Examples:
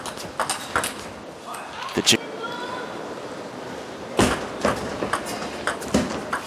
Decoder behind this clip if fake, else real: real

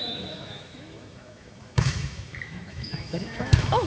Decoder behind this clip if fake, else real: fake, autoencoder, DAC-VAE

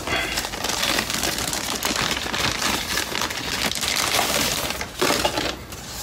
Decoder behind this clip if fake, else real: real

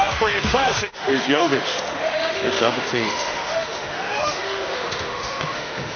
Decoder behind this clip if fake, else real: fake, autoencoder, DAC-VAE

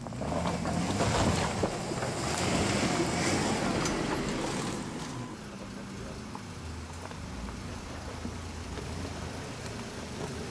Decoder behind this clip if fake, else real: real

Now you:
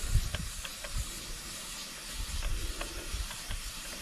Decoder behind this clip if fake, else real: real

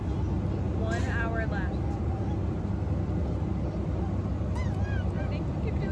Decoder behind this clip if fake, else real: real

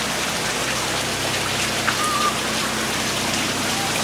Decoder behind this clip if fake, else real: real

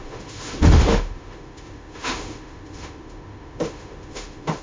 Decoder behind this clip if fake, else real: fake, autoencoder, DAC-VAE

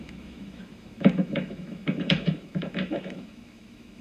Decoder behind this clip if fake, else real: fake, autoencoder, DAC-VAE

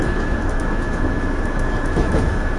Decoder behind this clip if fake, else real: fake, autoencoder, DAC-VAE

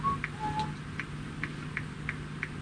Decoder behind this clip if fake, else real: real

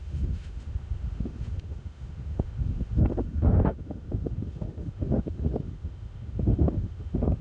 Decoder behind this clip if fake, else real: fake, autoencoder, DAC-VAE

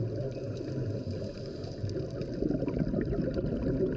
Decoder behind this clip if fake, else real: real